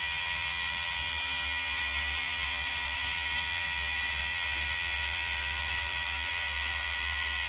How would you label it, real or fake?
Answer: fake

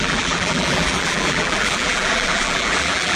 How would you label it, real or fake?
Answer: fake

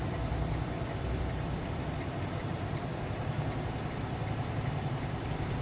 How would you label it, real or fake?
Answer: fake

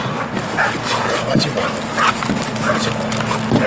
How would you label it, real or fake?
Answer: real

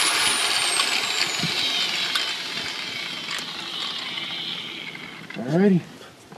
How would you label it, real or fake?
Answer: real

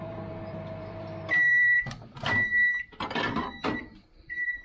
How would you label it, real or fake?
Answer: fake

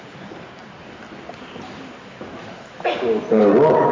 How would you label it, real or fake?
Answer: real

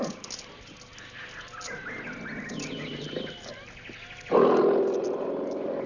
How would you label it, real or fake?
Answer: real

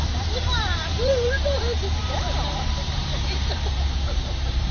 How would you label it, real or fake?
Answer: fake